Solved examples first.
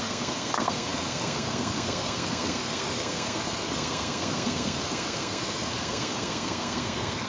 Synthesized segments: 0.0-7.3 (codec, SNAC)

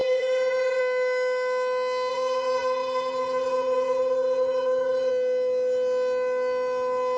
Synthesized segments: 0.0-0.8 (vocoder, Vocos); 2.1-5.1

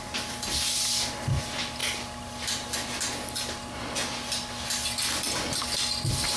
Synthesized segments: none

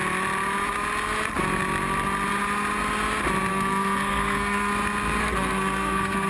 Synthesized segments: 3.5-4.7 (codec, SNAC); 5.2-6.3

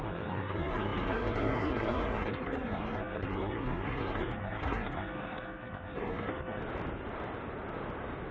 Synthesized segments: 0.0-6.6 (codec, SNAC)

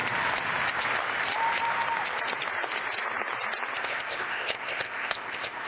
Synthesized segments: 3.8-5.7 (codec, ZipCodec)

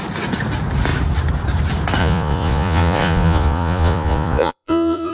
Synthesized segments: 2.0-5.1 (vocoder, Vocos)

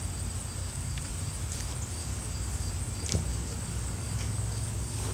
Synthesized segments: 0.6-1.1 (codec, DAC); 2.0-2.7; 3.3-5.1